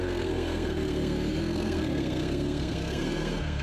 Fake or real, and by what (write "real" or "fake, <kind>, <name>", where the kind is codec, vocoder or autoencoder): fake, codec, SNAC